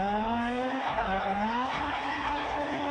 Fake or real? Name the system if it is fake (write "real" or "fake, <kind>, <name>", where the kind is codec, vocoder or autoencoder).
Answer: fake, codec, SNAC